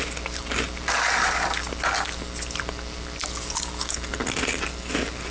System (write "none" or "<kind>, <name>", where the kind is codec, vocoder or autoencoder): none